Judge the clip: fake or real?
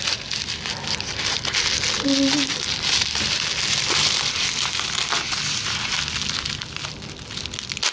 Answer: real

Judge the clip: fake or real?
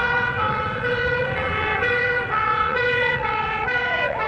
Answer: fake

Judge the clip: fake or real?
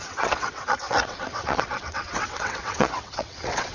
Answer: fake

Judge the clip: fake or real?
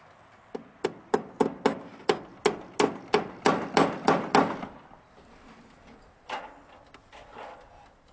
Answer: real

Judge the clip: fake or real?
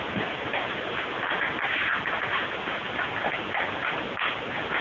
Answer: real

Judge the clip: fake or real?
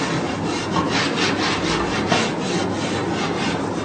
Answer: real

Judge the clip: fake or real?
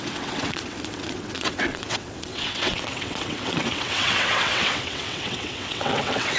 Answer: fake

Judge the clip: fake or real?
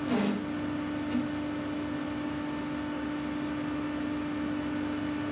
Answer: real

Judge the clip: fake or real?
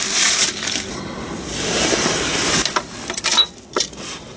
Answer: real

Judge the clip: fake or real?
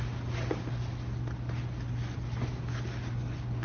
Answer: real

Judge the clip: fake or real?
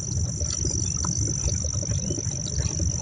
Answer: real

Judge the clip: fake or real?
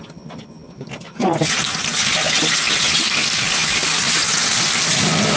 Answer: real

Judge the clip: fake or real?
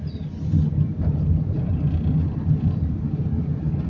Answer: real